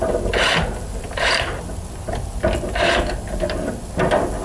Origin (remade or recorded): recorded